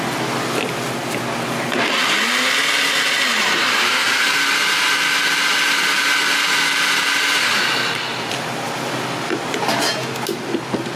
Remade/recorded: recorded